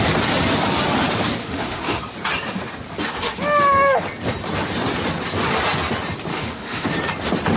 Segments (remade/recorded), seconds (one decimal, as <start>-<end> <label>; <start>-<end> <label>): 0.0-1.4 recorded; 1.4-2.0 remade; 2.0-6.3 recorded; 6.3-6.9 remade; 6.9-7.6 recorded